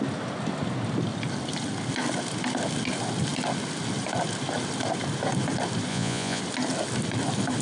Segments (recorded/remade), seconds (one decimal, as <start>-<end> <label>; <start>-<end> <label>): 0.0-5.9 recorded; 5.9-6.4 remade; 6.4-7.6 recorded